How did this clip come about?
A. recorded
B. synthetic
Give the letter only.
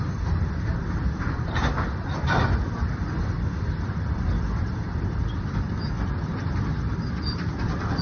A